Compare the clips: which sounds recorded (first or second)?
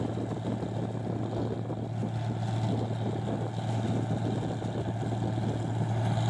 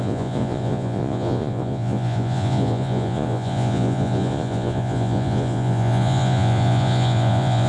first